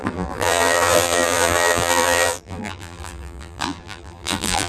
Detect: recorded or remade remade